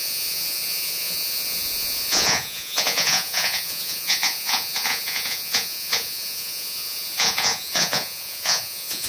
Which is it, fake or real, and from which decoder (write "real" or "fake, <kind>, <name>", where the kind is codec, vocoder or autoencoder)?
fake, vocoder, Vocos